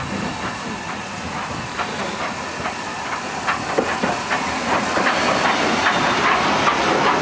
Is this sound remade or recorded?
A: recorded